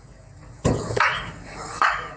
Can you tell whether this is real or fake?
fake